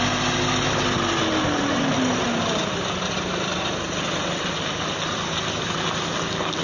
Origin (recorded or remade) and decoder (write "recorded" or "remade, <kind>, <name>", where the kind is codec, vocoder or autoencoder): recorded